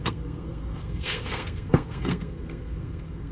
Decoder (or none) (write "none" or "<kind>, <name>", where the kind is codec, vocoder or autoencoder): codec, SNAC